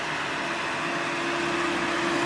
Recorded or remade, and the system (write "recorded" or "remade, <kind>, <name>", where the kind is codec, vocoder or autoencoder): recorded